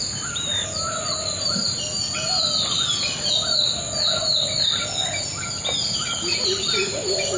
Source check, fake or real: real